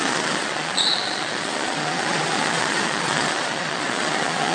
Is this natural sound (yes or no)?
no